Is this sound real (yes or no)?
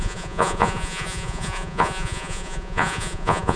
no